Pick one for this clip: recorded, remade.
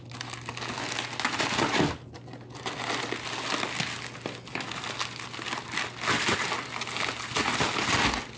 recorded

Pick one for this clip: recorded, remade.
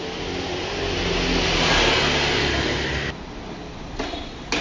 recorded